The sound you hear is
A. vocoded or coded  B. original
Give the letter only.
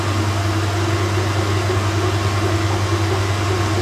B